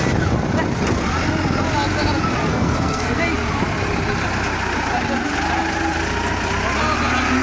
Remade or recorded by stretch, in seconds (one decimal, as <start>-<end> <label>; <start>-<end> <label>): 0.0-2.5 recorded; 2.5-3.2 remade; 3.2-7.4 recorded